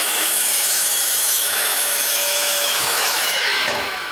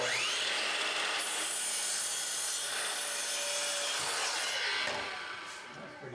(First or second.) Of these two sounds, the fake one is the first